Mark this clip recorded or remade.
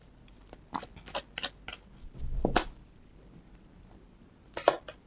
recorded